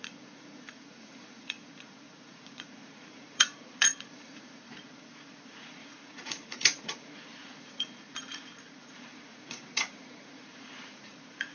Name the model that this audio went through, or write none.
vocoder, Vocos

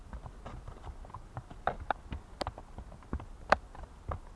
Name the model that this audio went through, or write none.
none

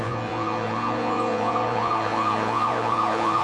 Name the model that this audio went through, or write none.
vocoder, Vocos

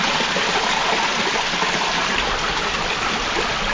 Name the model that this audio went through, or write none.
none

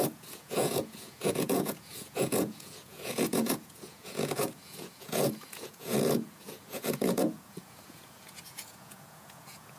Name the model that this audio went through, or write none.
vocoder, Vocos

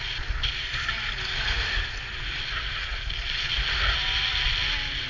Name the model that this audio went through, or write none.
none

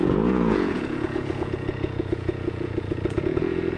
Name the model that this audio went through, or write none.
vocoder, Vocos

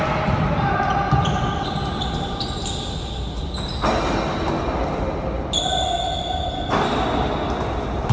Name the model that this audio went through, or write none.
none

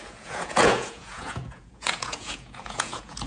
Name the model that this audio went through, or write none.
vocoder, Vocos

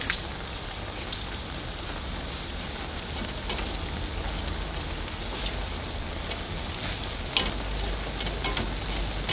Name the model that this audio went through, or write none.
none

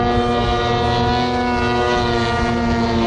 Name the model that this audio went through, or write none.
none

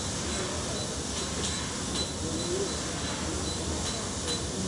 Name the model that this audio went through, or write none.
none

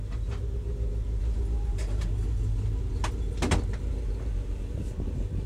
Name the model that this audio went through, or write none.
none